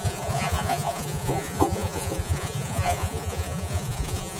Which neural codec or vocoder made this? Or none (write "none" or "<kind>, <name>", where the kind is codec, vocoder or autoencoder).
vocoder, Vocos